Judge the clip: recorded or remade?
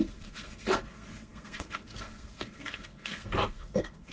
remade